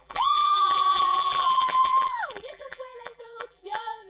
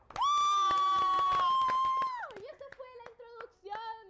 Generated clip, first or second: first